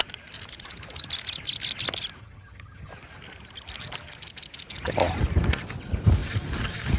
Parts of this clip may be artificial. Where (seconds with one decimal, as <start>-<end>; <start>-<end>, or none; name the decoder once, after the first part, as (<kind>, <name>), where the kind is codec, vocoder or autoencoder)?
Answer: 2.2-2.9 (vocoder, HiFi-GAN)